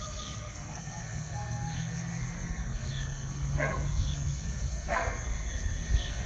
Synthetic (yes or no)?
yes